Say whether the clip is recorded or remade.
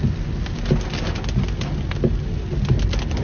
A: recorded